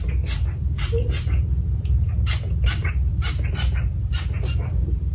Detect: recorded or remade recorded